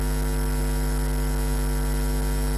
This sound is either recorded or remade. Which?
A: recorded